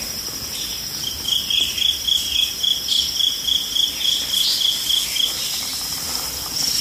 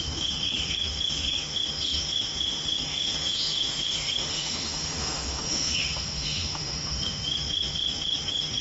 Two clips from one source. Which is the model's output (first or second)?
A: second